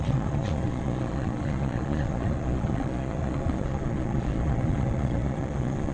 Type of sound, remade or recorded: remade